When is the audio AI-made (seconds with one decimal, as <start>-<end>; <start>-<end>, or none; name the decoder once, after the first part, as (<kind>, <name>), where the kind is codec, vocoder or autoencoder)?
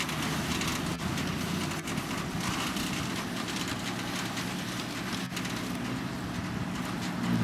none